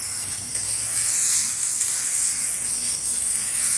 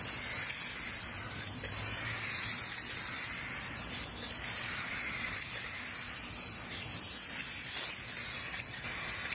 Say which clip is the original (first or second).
second